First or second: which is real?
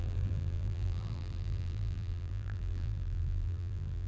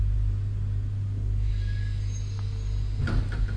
second